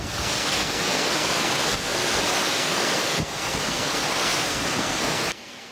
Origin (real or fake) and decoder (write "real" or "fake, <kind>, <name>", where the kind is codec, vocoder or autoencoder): fake, codec, SNAC